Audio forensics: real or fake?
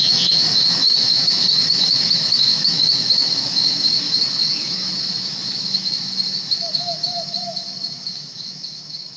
fake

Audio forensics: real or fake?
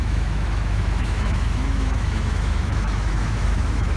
fake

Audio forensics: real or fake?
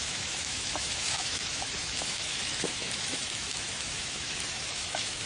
fake